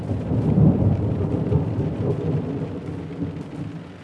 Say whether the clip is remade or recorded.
recorded